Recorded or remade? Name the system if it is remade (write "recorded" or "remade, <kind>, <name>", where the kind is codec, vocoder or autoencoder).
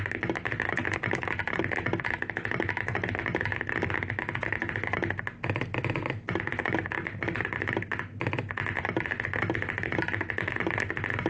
recorded